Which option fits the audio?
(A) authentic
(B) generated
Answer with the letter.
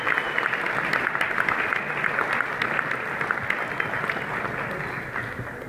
A